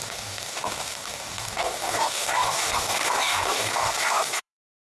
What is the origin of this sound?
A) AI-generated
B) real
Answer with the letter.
A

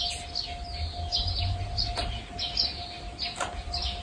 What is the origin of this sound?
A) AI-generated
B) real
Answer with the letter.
B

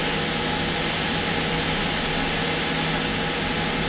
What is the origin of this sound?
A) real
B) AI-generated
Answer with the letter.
A